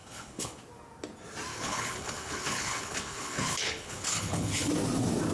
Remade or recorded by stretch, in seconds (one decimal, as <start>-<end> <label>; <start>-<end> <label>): 0.0-0.6 remade; 0.6-1.5 recorded; 1.5-4.7 remade; 4.7-5.3 recorded